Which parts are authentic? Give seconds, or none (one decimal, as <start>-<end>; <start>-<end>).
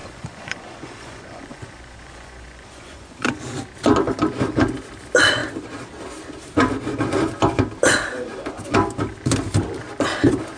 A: 3.4-10.6